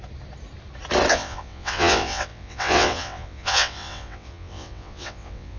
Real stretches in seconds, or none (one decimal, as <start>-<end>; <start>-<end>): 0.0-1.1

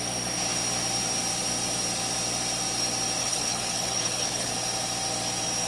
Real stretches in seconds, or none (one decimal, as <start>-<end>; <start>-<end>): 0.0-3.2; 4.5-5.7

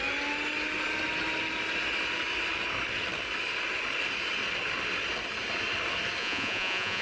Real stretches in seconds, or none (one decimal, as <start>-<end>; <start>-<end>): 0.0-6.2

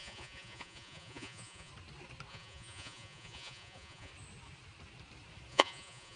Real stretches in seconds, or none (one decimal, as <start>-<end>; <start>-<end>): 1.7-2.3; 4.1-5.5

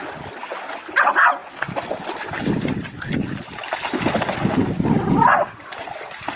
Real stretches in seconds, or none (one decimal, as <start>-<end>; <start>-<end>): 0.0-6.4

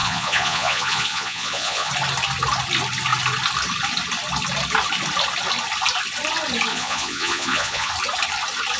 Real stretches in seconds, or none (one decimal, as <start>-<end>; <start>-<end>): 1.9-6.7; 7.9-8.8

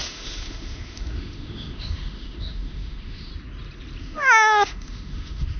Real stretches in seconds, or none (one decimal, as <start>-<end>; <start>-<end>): 3.3-4.0

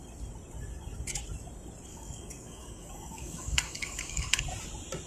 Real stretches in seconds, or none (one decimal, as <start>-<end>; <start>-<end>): 0.0-1.9; 4.4-5.1